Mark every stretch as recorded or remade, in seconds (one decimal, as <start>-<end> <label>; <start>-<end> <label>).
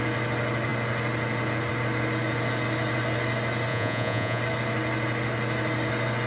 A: 0.0-3.7 recorded; 3.7-4.4 remade; 4.4-6.3 recorded